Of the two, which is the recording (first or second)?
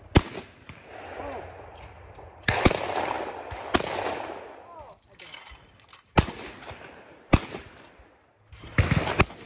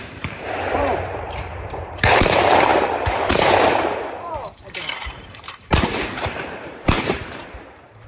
first